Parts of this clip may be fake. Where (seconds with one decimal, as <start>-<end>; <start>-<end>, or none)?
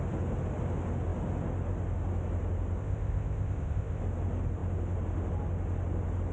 2.8-4.0